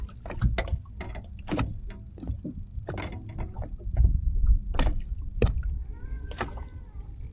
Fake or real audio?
real